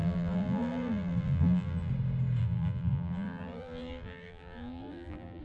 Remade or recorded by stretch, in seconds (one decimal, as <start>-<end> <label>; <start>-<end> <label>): 0.0-1.9 remade; 1.9-2.4 recorded; 2.4-5.4 remade